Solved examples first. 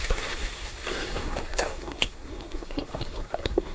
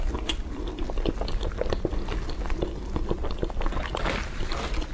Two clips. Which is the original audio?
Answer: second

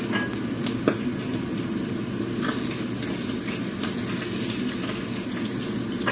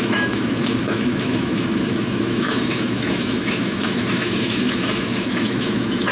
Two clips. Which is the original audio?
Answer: first